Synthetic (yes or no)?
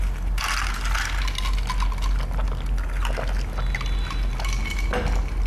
no